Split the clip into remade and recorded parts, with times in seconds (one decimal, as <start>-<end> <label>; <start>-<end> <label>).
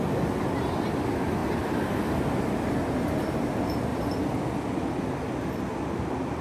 0.0-1.4 recorded; 1.4-2.2 remade; 2.2-3.9 recorded; 3.9-4.7 remade; 4.7-6.4 recorded